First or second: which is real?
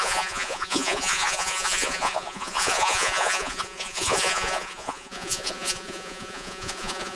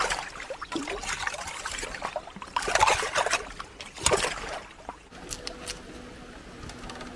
second